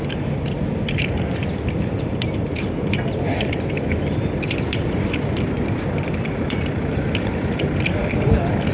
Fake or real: real